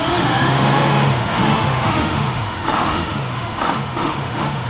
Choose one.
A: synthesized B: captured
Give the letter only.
A